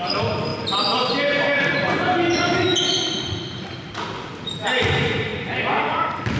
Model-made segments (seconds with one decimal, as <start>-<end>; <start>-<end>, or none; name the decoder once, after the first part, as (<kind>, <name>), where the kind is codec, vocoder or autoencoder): 0.0-0.5 (vocoder, BigVGAN v2); 3.2-5.3